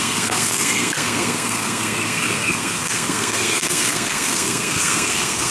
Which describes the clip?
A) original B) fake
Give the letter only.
B